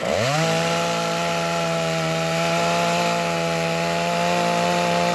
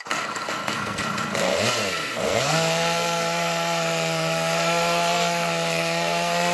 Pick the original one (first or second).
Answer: first